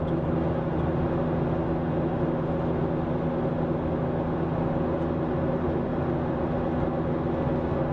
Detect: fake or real real